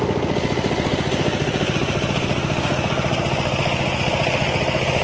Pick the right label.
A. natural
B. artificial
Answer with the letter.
A